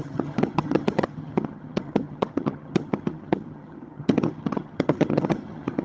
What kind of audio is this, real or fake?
fake